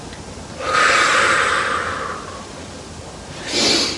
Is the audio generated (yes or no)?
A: no